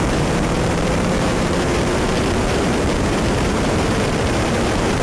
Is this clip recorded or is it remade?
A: remade